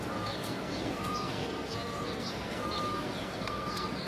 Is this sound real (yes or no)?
no